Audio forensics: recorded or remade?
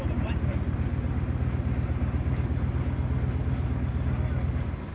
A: recorded